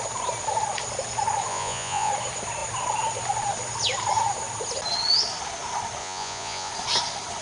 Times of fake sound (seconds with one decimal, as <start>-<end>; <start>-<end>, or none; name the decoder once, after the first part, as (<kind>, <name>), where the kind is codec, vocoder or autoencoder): 1.5-2.1 (vocoder, Vocos); 6.0-6.7